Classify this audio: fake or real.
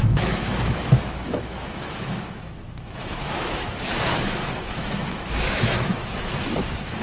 fake